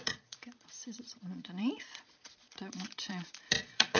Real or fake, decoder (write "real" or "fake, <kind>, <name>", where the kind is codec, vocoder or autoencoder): fake, vocoder, Vocos